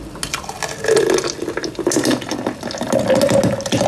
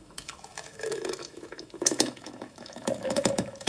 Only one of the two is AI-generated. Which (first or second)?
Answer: second